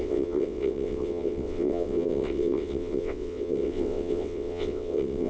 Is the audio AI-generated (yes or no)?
yes